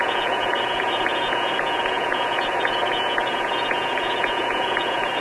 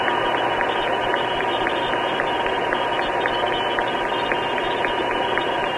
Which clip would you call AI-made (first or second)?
first